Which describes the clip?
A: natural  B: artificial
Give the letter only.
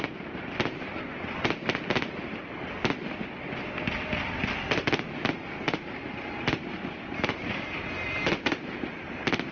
A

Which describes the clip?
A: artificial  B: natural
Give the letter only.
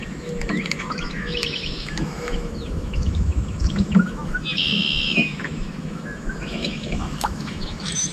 A